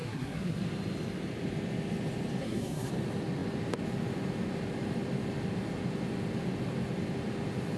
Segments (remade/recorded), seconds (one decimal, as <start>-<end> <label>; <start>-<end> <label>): 0.0-0.6 remade; 0.6-2.4 recorded; 2.4-2.9 remade; 2.9-7.8 recorded